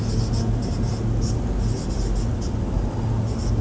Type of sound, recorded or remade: recorded